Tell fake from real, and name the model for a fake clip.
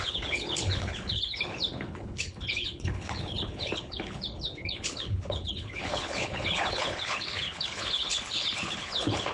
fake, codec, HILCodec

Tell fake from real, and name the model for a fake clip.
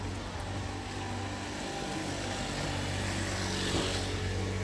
real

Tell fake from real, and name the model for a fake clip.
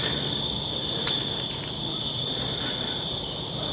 real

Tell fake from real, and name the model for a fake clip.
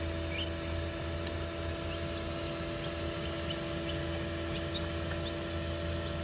real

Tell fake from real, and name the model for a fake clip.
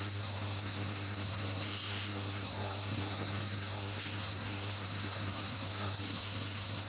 fake, codec, SNAC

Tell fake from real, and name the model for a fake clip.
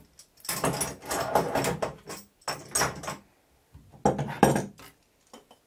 real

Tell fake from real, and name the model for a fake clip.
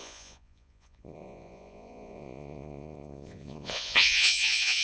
fake, vocoder, Vocos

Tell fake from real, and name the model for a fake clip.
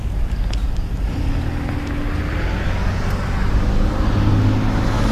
real